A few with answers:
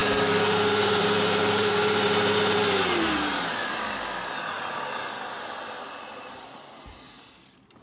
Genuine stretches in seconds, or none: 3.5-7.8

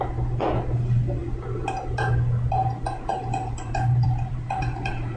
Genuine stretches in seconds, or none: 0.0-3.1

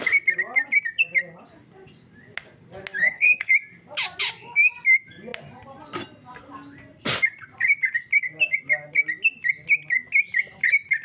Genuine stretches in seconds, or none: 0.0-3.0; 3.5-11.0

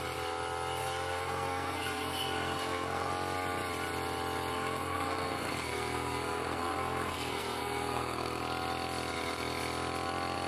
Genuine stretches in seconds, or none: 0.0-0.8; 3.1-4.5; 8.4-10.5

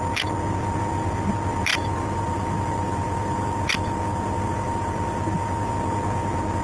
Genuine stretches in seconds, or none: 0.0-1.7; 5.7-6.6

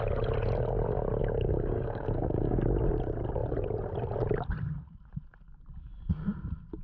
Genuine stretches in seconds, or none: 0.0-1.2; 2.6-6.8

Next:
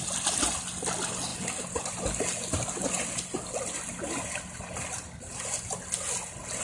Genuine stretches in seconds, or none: 0.0-6.6